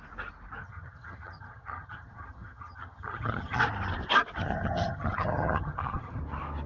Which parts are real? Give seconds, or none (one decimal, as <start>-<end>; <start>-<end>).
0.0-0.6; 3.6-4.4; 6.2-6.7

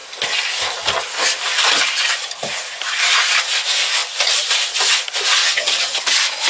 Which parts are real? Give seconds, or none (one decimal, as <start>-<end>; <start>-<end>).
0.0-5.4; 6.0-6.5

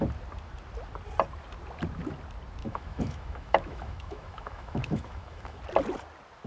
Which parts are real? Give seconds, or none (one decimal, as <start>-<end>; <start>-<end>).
0.0-2.6; 5.6-6.5

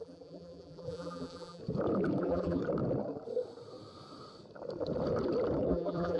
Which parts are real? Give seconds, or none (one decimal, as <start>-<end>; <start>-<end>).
1.6-2.2; 2.6-5.7